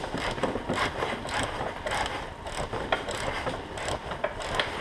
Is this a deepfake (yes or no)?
no